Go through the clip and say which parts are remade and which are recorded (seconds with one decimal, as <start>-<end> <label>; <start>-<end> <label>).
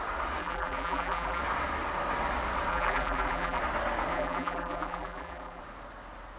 0.0-0.4 recorded; 0.4-1.4 remade; 1.4-2.7 recorded; 2.7-3.6 remade; 3.6-4.1 recorded; 4.1-5.6 remade; 5.6-6.4 recorded